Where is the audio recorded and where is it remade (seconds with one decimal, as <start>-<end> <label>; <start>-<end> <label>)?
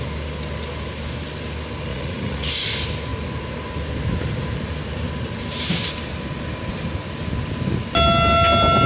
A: 0.0-1.9 recorded; 1.9-2.5 remade; 2.5-8.9 recorded